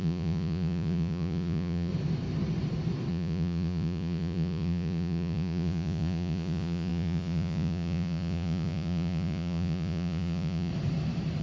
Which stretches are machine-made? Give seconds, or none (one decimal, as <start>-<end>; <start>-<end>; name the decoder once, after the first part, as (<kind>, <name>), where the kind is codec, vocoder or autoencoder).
0.0-1.9 (vocoder, Vocos); 3.1-10.7